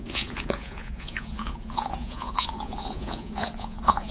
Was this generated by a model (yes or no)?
yes